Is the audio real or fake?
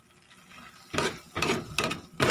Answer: real